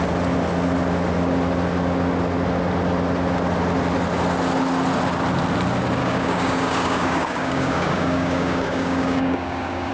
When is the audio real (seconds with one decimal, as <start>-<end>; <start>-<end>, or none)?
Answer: 0.0-6.0